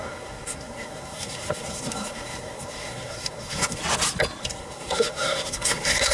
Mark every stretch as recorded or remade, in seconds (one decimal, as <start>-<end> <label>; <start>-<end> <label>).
0.0-3.8 remade; 3.8-4.4 recorded; 4.4-6.1 remade